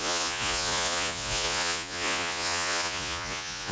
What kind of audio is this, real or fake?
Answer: fake